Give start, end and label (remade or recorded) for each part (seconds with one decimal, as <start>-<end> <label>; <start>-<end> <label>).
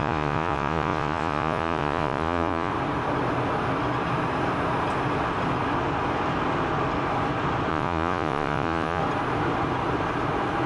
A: 0.0-2.7 remade; 2.7-7.7 recorded; 7.7-9.0 remade; 9.0-10.7 recorded